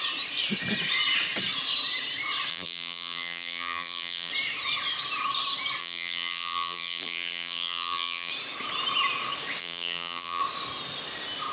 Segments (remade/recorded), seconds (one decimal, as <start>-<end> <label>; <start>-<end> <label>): 0.0-2.5 recorded; 2.5-4.3 remade; 4.3-5.8 recorded; 5.8-8.3 remade; 8.3-9.6 recorded; 9.6-10.4 remade; 10.4-11.5 recorded